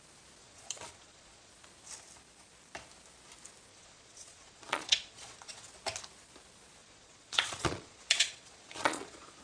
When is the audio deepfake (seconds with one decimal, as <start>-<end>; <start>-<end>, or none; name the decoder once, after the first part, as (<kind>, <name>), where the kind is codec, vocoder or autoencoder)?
0.4-1.5 (vocoder, Vocos); 3.7-5.7; 6.8-9.4